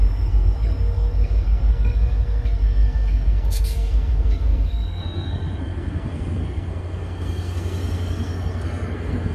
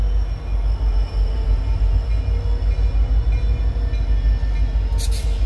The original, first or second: second